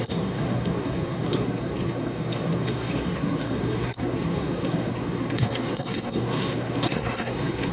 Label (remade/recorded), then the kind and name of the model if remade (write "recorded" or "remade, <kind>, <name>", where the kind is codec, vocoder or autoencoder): remade, codec, SNAC